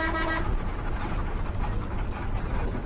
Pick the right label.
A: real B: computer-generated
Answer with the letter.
A